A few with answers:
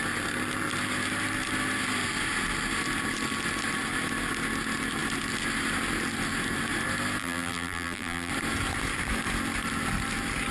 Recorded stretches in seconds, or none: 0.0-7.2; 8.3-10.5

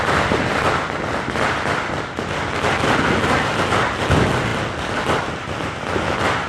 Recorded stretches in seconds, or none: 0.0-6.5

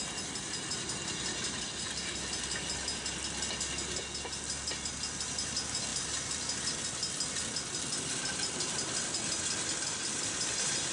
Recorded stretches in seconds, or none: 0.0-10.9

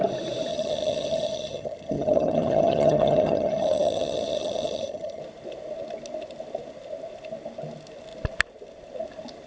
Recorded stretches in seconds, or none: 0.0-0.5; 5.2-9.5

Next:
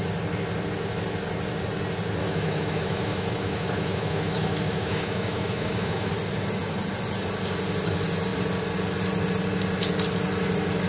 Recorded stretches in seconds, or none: 0.0-2.2; 6.1-10.9

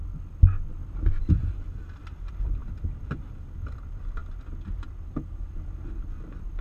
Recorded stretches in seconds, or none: 0.0-1.3

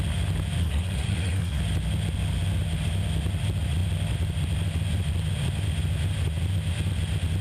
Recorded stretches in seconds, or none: 0.0-0.6; 1.6-7.4